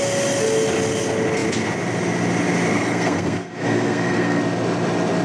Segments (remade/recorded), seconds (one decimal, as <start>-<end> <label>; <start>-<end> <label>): 0.0-2.7 recorded; 2.7-4.4 remade; 4.4-5.2 recorded